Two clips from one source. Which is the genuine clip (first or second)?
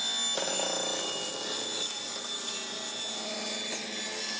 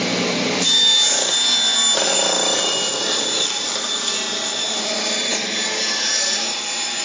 first